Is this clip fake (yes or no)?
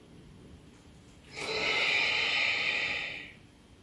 no